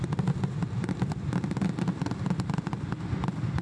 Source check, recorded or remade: recorded